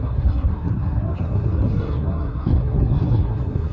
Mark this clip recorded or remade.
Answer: remade